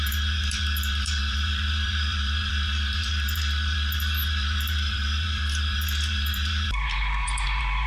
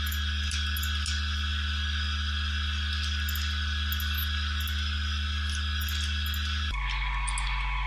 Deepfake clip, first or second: first